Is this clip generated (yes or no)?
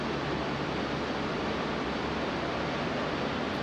no